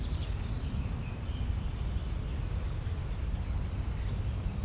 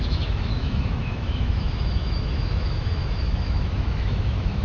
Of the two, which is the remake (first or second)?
second